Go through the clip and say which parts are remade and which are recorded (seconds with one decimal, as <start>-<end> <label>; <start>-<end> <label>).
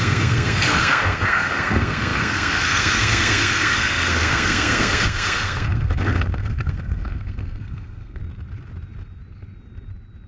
0.0-8.2 remade; 8.2-10.3 recorded